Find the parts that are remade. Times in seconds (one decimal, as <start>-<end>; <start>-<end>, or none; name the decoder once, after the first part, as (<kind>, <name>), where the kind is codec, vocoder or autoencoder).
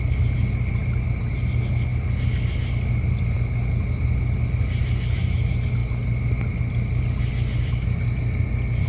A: none